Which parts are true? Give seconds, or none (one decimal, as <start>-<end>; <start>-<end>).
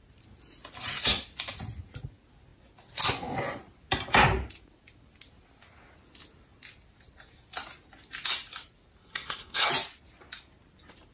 0.0-9.0; 9.7-11.1